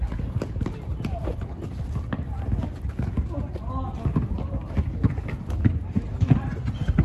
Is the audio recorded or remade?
recorded